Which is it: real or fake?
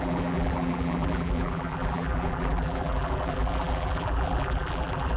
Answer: fake